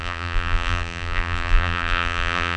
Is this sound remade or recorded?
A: remade